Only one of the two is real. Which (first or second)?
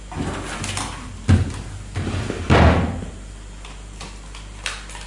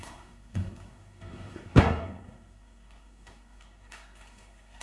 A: first